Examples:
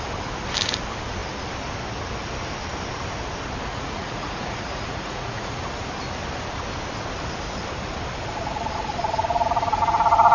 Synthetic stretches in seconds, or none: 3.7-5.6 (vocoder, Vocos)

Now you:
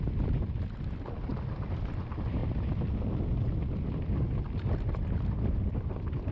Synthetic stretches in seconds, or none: none

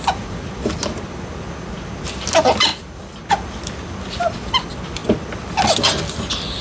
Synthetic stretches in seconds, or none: none